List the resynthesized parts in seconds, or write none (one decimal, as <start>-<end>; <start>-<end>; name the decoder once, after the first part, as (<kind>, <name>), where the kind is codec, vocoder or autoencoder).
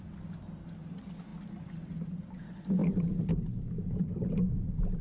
none